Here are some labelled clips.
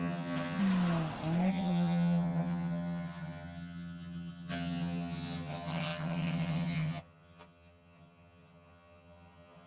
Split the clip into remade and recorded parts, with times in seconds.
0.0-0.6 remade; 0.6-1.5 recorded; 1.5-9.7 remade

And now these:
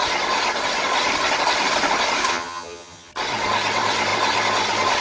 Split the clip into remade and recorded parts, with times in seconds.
0.0-2.3 recorded; 2.3-3.1 remade; 3.1-5.0 recorded

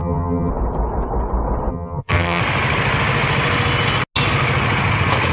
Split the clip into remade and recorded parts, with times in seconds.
0.0-0.5 remade; 0.5-1.7 recorded; 1.7-2.4 remade; 2.4-5.3 recorded

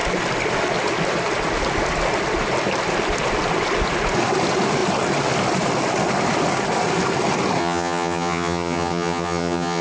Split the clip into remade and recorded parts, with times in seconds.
0.0-7.6 recorded; 7.6-9.8 remade

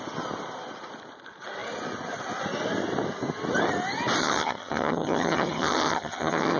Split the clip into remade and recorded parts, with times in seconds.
0.0-4.2 recorded; 4.2-6.6 remade

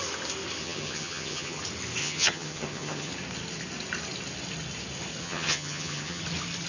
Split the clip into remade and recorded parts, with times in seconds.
0.0-0.6 recorded; 0.6-1.6 remade; 1.6-2.0 recorded; 2.0-3.1 remade; 3.1-5.2 recorded; 5.2-6.2 remade; 6.2-6.7 recorded

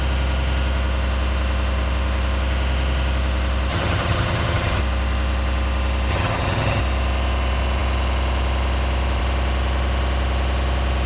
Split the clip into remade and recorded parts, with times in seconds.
0.0-3.7 recorded; 3.7-4.8 remade; 4.8-6.1 recorded; 6.1-6.8 remade; 6.8-11.1 recorded

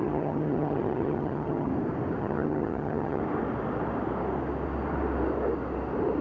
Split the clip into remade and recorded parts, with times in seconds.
0.0-1.7 remade; 1.7-2.2 recorded; 2.2-3.2 remade; 3.2-6.2 recorded